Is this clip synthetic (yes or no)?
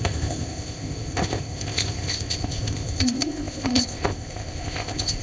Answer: yes